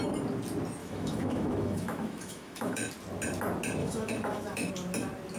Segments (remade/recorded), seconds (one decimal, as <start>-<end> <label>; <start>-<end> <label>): 0.0-0.8 recorded; 0.8-2.9 remade; 2.9-3.8 recorded; 3.8-4.7 remade; 4.7-5.4 recorded